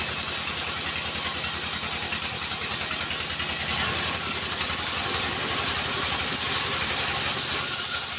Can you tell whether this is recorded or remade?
recorded